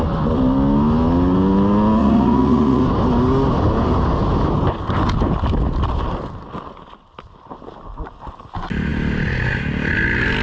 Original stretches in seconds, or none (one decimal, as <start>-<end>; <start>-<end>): 0.0-2.0; 2.8-10.4